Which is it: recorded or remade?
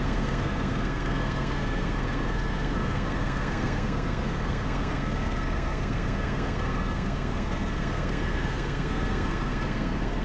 remade